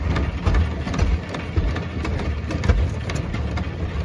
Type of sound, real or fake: real